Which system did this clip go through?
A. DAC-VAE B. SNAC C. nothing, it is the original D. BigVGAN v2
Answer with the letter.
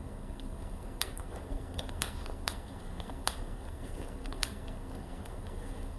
B